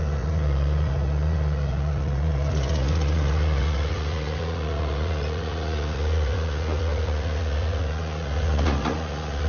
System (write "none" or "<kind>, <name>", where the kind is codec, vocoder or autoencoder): vocoder, Vocos